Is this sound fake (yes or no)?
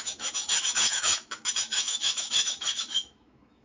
yes